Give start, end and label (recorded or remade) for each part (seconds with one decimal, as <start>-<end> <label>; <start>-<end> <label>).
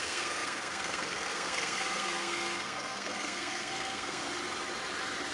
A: 0.0-4.2 remade; 4.2-5.3 recorded